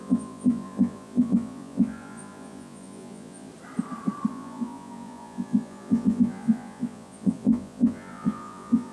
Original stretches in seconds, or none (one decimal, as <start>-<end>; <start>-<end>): 3.5-4.3

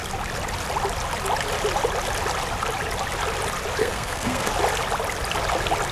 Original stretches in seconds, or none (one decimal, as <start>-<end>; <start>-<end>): 0.0-3.8; 4.5-5.9

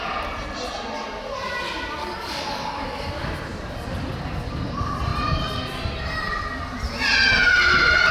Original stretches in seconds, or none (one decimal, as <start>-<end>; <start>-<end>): 0.0-2.0; 3.1-8.1